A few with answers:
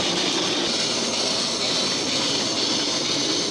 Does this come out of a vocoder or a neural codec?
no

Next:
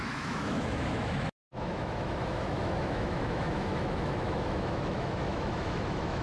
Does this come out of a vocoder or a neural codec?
yes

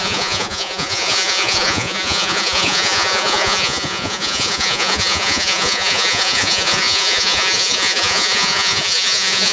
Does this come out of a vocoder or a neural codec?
yes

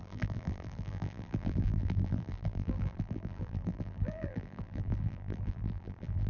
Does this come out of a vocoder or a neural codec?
yes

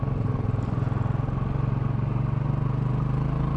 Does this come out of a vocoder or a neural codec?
no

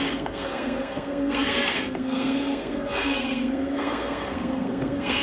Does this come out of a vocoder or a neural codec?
yes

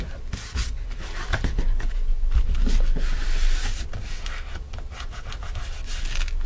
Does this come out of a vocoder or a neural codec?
no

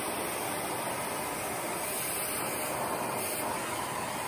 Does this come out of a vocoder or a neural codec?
no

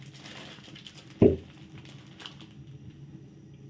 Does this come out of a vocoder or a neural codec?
no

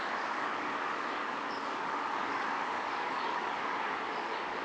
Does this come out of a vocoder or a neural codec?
yes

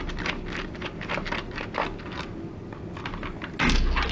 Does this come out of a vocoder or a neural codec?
no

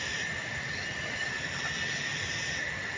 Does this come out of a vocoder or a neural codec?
no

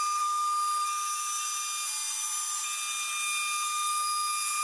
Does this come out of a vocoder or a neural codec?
no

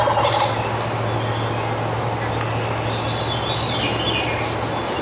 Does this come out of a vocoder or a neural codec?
no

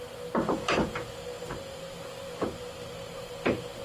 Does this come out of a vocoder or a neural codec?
no